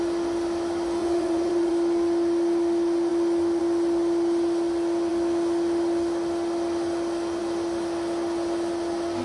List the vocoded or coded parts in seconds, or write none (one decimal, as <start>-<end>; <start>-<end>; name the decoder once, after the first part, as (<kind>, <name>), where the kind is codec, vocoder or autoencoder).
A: 1.0-1.7 (vocoder, Vocos)